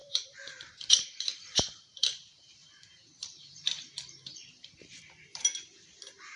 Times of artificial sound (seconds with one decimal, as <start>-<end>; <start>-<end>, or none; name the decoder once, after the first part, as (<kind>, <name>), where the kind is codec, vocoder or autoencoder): 0.0-6.4 (vocoder, BigVGAN v2)

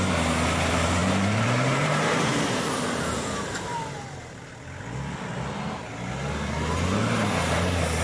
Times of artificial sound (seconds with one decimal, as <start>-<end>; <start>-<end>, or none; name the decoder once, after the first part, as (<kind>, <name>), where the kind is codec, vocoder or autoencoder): 1.0-4.4 (vocoder, BigVGAN v2)

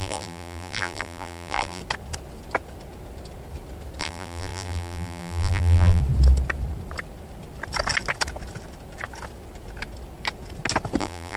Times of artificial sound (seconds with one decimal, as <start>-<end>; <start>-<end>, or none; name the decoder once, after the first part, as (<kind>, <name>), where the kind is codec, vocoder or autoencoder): 0.0-1.8 (vocoder, BigVGAN v2); 4.0-6.0; 11.0-11.4